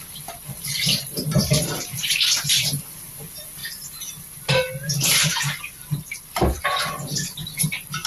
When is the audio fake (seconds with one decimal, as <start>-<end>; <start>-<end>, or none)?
0.0-3.6; 5.6-8.1